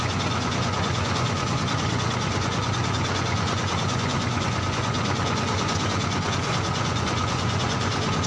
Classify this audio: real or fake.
fake